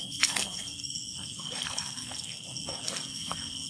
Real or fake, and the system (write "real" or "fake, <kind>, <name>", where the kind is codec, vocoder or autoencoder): fake, codec, SNAC